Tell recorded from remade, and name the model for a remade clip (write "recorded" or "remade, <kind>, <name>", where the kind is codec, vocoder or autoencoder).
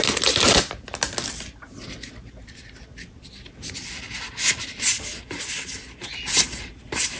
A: recorded